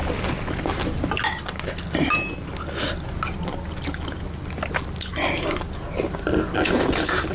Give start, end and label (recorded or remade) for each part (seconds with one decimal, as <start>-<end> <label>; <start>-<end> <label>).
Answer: 0.0-7.3 recorded